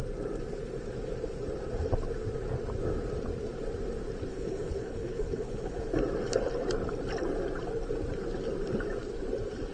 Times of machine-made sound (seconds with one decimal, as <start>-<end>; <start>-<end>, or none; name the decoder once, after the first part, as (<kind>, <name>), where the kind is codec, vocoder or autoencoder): 4.3-5.9 (codec, HILCodec)